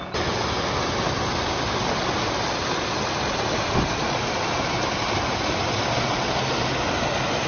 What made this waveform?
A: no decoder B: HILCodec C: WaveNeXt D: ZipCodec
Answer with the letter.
A